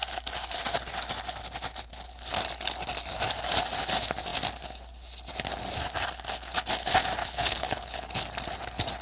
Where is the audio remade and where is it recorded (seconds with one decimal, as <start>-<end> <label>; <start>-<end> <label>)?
0.0-7.2 recorded; 7.2-8.1 remade; 8.1-9.0 recorded